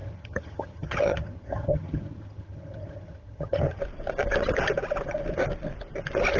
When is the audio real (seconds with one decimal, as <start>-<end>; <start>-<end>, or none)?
3.8-6.4